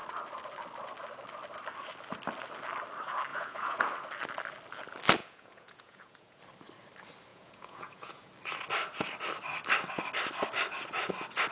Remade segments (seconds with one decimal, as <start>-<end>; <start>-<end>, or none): 3.3-3.8; 5.2-6.4; 7.3-8.3